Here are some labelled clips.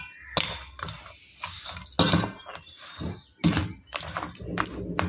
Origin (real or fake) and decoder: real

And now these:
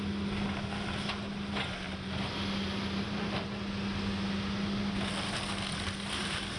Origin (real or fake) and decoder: real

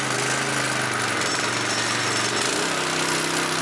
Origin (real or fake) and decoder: real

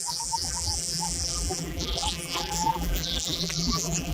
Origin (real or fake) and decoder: fake, vocoder, BigVGAN v2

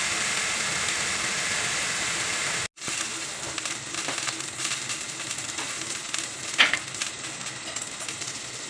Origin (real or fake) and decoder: real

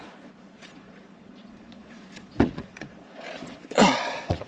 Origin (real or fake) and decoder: fake, vocoder, Vocos